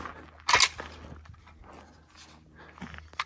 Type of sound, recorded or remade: recorded